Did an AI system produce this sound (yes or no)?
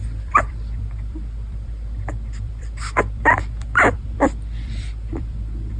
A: yes